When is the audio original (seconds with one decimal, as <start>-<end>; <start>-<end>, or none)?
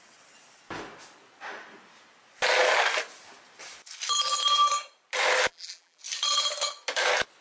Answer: 0.0-5.5; 6.0-7.4